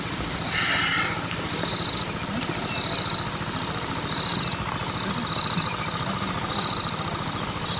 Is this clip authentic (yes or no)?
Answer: yes